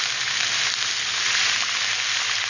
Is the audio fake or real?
real